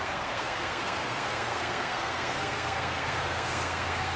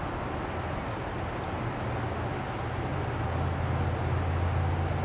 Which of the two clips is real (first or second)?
second